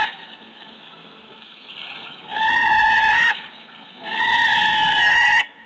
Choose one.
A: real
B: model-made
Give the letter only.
A